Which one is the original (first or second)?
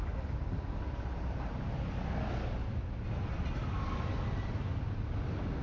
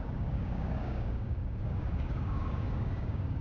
first